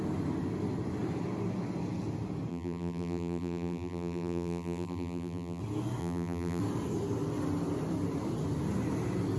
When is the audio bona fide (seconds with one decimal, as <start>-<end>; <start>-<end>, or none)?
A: 0.0-2.5; 5.6-6.0; 6.6-9.4